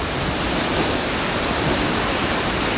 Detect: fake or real fake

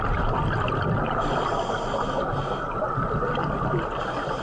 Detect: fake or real real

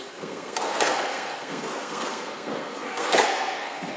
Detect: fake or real fake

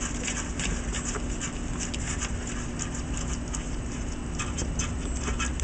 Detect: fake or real real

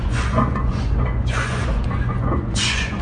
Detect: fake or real fake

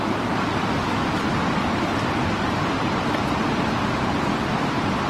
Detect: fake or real real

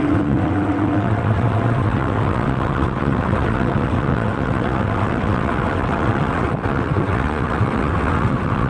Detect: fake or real fake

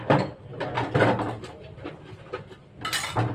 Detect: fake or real fake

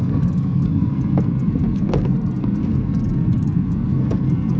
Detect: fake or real fake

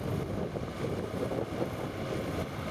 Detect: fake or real real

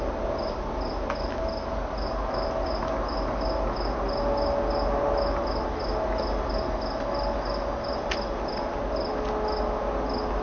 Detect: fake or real real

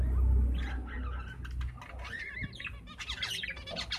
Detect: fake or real real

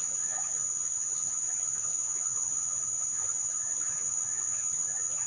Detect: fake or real fake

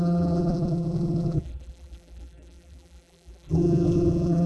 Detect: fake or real fake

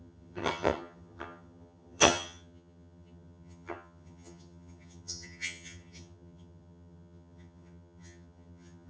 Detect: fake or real fake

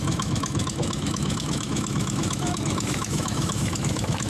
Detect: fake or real fake